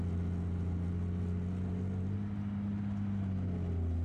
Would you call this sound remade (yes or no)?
no